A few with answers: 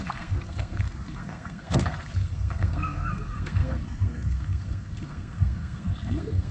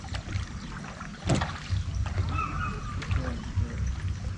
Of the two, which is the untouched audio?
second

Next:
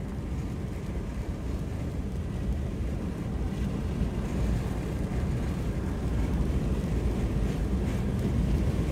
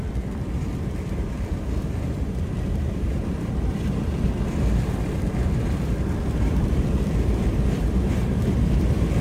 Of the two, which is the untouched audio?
first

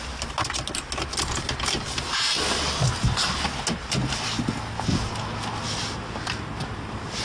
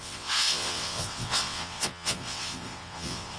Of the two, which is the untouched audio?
first